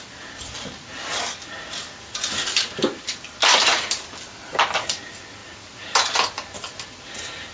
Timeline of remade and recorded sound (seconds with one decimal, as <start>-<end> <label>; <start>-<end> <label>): 0.0-7.5 recorded

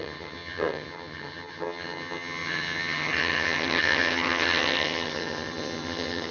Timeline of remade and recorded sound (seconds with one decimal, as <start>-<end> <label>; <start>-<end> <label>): 0.0-6.3 remade

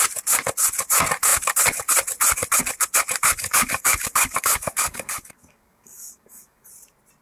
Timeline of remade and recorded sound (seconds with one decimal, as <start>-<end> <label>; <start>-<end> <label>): 0.0-3.2 recorded; 3.2-6.7 remade; 6.7-7.2 recorded

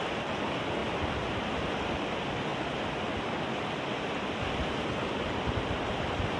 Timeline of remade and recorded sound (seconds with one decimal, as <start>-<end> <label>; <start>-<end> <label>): 0.0-6.4 recorded

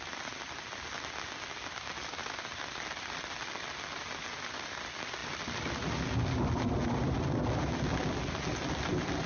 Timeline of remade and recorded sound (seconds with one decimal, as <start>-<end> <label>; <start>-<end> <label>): 0.0-9.3 recorded

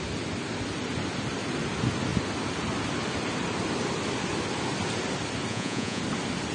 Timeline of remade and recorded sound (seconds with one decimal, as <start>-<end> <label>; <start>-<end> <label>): 0.0-5.5 recorded; 5.5-6.0 remade; 6.0-6.5 recorded

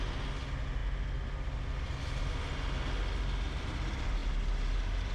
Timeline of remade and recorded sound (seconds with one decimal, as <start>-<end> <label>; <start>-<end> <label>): 0.0-5.1 recorded

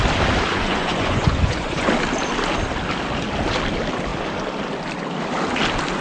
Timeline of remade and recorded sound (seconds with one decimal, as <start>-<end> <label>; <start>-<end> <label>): 0.0-0.5 recorded; 0.5-1.9 remade; 1.9-6.0 recorded